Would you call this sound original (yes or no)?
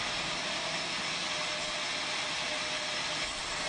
yes